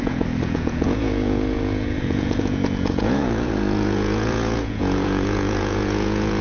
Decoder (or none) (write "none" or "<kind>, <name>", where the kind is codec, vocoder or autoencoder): vocoder, Vocos